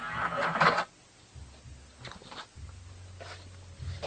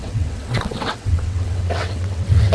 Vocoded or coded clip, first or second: second